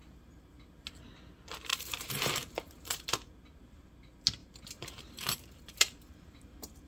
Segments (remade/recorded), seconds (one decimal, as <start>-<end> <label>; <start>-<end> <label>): 0.0-1.7 recorded; 1.7-3.1 remade; 3.1-4.4 recorded; 4.4-6.9 remade